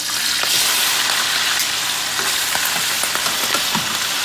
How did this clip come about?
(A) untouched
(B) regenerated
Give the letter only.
A